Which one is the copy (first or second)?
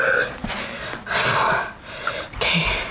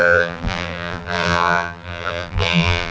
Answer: second